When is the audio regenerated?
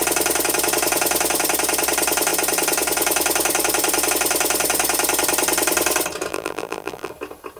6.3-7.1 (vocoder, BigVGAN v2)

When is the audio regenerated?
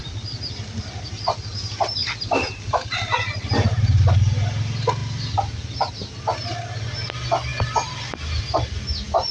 0.0-1.2 (vocoder, BigVGAN v2); 2.0-3.5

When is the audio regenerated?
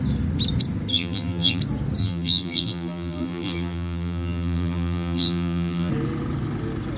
0.9-1.6 (vocoder, BigVGAN v2); 2.0-5.9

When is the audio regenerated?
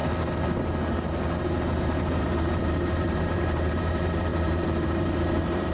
1.8-5.7 (vocoder, BigVGAN v2)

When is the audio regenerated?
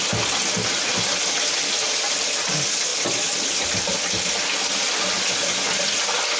none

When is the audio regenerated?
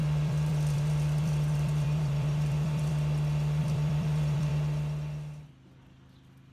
0.0-2.9 (vocoder, BigVGAN v2); 3.6-4.5